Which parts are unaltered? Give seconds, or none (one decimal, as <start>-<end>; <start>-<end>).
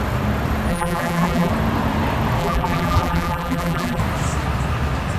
0.0-0.7; 1.5-2.4; 4.0-5.2